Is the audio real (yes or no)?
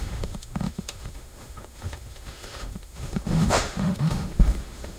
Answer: no